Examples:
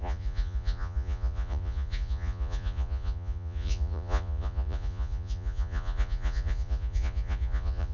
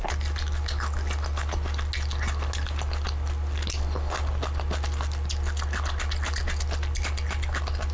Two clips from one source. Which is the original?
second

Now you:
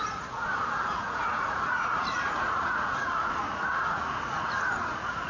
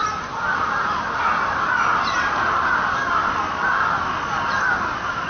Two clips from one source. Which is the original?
second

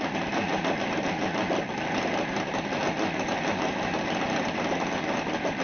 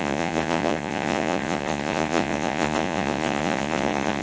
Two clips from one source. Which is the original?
first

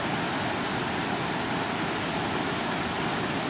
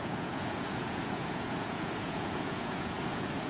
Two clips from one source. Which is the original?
first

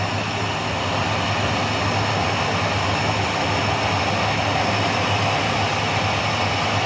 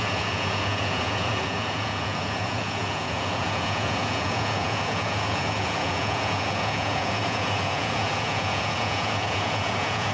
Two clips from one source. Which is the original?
first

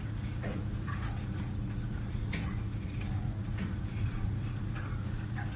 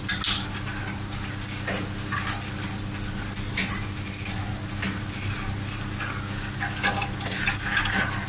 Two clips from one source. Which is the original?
second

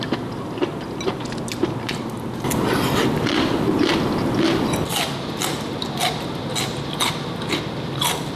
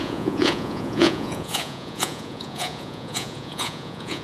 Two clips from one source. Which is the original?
first